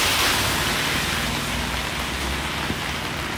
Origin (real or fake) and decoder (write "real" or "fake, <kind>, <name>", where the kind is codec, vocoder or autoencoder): real